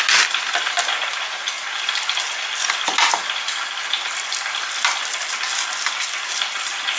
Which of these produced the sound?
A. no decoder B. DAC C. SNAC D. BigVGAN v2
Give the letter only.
A